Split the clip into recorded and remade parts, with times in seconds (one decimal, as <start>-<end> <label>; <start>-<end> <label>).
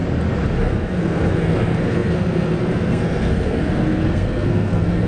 0.0-0.6 recorded; 0.6-5.1 remade